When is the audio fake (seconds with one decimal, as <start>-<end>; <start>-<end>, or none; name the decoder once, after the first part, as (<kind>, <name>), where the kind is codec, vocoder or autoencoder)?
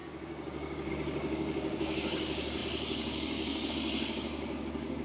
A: 0.0-5.0 (codec, DAC)